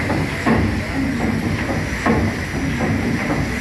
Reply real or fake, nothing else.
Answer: real